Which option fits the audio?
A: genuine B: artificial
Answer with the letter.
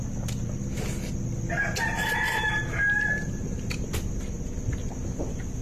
A